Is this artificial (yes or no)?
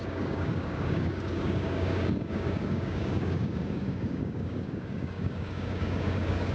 yes